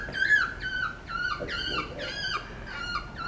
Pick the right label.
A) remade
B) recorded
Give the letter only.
B